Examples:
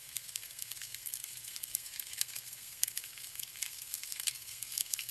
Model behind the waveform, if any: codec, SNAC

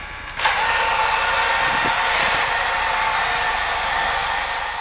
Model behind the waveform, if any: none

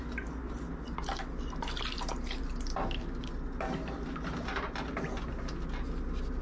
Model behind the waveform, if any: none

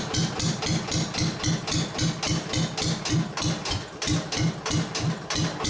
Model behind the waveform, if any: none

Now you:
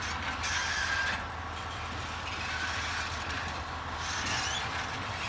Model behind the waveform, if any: none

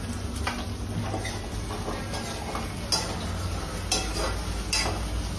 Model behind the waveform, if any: none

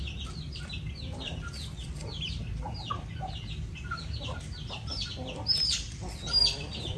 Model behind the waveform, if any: vocoder, BigVGAN v2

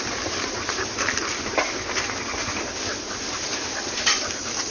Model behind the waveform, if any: none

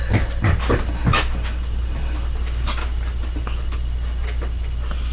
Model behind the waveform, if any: none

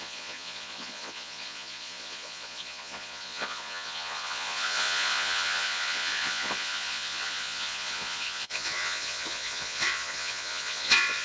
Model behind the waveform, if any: vocoder, Vocos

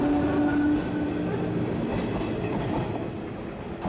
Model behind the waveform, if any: none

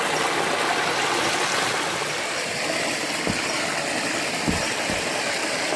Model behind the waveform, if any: none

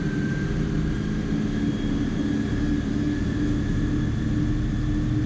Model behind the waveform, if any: none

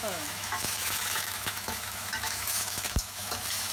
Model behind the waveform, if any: autoencoder, DAC-VAE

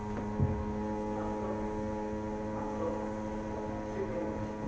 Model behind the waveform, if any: none